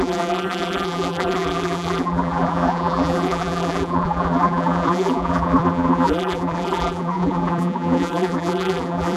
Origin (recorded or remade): remade